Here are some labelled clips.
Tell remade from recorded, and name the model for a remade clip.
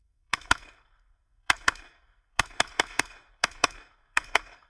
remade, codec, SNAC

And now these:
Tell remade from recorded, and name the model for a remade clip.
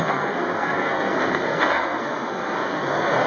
remade, codec, SNAC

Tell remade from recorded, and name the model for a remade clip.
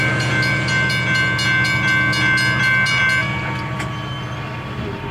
recorded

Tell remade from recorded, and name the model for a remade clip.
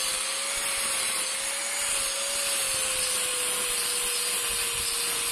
recorded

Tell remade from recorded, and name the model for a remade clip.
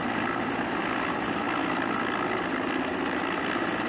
recorded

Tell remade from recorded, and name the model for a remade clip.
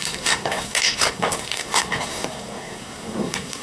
remade, codec, SNAC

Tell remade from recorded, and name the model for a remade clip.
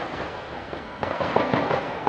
remade, codec, SNAC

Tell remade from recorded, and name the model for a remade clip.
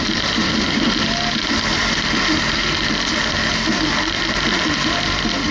recorded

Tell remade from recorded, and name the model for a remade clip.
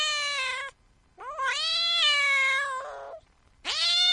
recorded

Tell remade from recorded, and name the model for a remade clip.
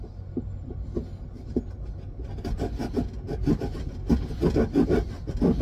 recorded